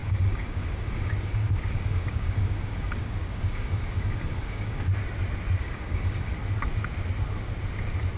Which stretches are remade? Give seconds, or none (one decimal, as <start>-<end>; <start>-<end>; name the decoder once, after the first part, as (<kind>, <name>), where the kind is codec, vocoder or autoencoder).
0.0-4.9 (codec, DAC); 5.6-6.3